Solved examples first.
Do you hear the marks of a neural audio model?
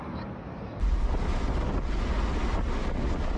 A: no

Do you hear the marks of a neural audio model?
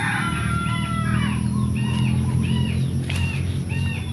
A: no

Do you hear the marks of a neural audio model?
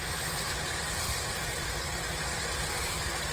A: yes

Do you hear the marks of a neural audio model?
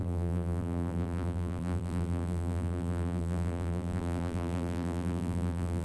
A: yes